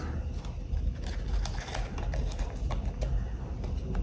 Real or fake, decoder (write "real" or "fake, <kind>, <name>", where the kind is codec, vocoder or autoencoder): real